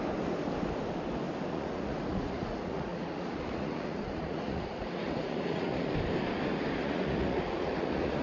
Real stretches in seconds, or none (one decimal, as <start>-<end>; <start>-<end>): 0.0-1.5; 5.9-6.8